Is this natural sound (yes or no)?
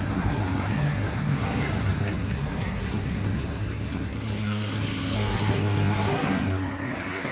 no